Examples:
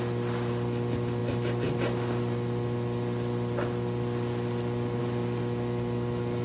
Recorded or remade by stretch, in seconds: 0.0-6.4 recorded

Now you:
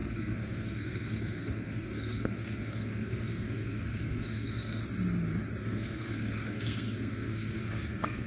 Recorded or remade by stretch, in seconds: 0.0-4.8 remade; 4.8-5.6 recorded; 5.6-8.3 remade

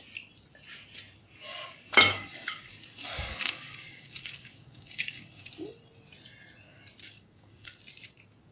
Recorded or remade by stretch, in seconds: 0.0-1.2 recorded; 1.2-5.5 remade; 5.5-7.0 recorded; 7.0-7.8 remade; 7.8-8.5 recorded

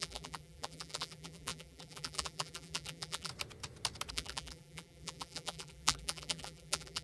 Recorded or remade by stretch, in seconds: 0.0-3.3 remade; 3.3-4.1 recorded; 4.1-7.0 remade

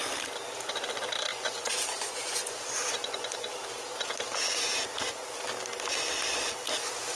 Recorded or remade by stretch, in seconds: 0.0-1.3 recorded; 1.3-3.5 remade; 3.5-7.1 recorded

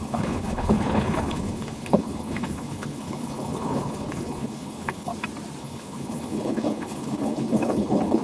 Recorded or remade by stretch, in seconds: 0.0-5.1 remade; 5.1-5.6 recorded; 5.6-8.2 remade